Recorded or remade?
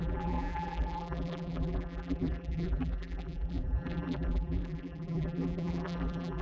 remade